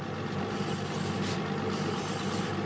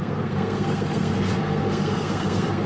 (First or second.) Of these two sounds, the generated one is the second